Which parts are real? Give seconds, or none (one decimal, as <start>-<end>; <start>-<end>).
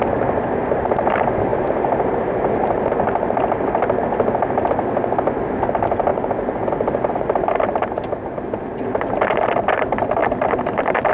0.0-11.1